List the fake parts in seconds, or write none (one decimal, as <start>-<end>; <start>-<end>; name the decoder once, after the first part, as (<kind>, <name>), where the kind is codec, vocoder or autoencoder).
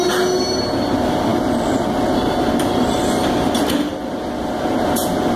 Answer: none